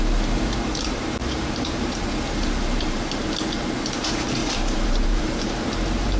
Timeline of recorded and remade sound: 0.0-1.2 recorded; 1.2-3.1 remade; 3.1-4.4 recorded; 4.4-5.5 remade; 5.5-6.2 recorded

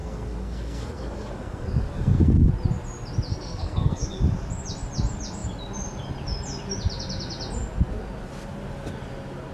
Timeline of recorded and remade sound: 0.0-2.5 remade; 2.5-3.3 recorded; 3.3-4.2 remade; 4.2-9.5 recorded

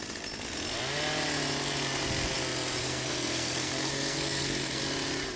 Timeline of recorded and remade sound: 0.0-2.8 recorded; 2.8-4.8 remade; 4.8-5.4 recorded

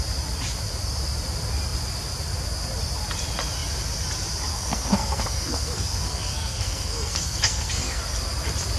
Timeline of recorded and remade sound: 0.0-4.5 recorded; 4.5-8.0 remade; 8.0-8.8 recorded

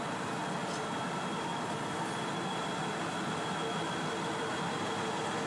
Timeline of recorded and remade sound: 0.0-5.5 recorded

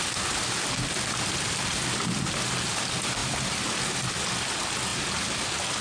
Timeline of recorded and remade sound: 0.0-5.8 recorded

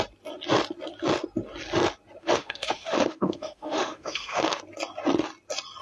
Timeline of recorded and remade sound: 0.0-2.2 recorded; 2.2-4.6 remade; 4.6-5.8 recorded